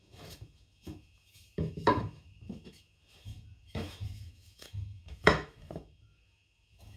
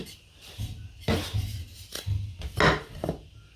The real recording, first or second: second